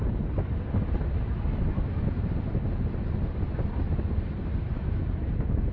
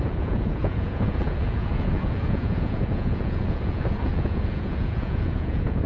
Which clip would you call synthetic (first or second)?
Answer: second